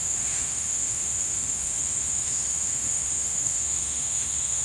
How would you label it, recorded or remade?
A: remade